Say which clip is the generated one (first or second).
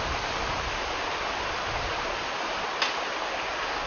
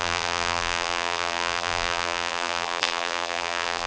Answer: second